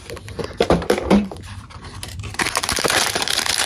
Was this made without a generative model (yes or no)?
no